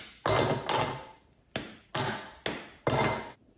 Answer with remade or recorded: recorded